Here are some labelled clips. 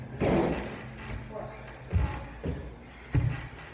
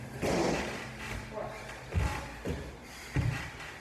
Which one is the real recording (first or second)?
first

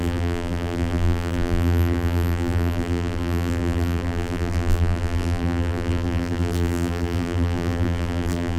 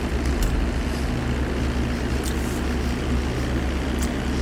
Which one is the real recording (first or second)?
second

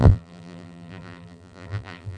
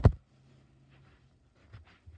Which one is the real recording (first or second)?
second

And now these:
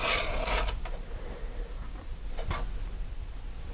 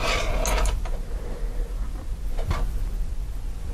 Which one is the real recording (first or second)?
second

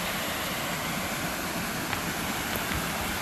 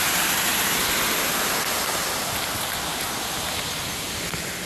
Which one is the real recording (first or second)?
second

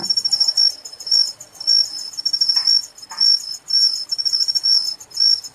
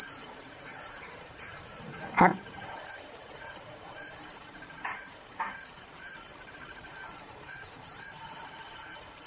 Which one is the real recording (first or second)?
first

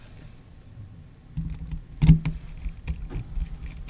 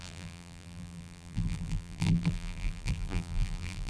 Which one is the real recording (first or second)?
first